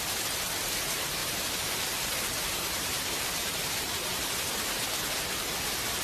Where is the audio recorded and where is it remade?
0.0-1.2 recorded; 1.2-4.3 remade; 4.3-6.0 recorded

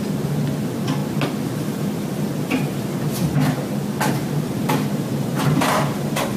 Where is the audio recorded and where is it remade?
0.0-4.2 recorded; 4.2-6.4 remade

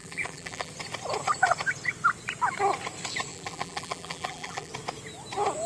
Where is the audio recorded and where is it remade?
0.0-0.7 remade; 0.7-3.3 recorded; 3.3-4.7 remade; 4.7-5.7 recorded

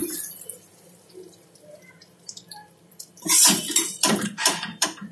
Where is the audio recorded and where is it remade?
0.0-5.1 remade

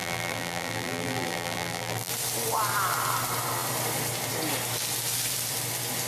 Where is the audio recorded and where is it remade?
0.0-2.1 remade; 2.1-6.1 recorded

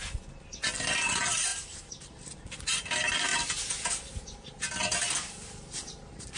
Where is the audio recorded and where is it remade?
0.0-1.1 recorded; 1.1-3.3 remade; 3.3-5.2 recorded; 5.2-6.4 remade

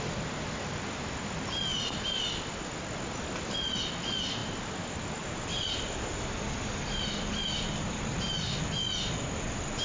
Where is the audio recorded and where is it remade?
0.0-1.7 recorded; 1.7-2.5 remade; 2.5-4.4 recorded; 4.4-8.6 remade; 8.6-9.8 recorded